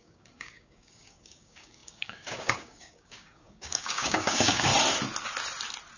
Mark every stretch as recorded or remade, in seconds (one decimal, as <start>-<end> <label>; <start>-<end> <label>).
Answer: 0.0-4.7 remade; 4.7-6.0 recorded